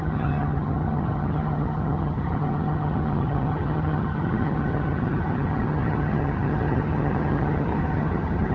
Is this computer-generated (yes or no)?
yes